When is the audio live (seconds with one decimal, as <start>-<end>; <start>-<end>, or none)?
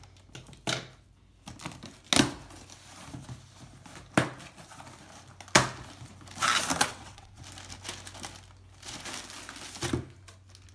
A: 0.0-6.9; 7.4-10.7